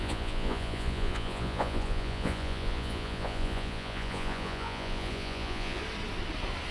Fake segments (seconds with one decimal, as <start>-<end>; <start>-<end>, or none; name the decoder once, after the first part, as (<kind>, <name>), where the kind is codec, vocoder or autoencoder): 0.0-5.8 (vocoder, Vocos)